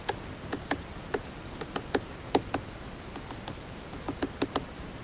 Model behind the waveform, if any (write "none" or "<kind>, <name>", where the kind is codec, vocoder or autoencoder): none